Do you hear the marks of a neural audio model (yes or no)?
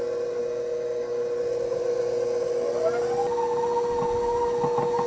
no